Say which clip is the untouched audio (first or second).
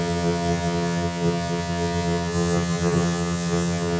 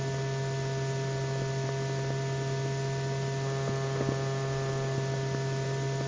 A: second